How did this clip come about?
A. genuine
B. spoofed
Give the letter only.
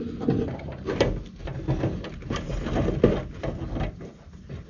A